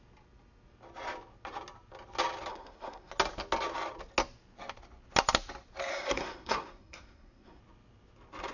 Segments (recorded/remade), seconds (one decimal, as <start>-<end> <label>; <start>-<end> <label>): 0.0-2.5 recorded; 2.5-3.1 remade; 3.1-5.9 recorded; 5.9-7.6 remade; 7.6-8.5 recorded